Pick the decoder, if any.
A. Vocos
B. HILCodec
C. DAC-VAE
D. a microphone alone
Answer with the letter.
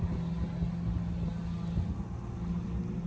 D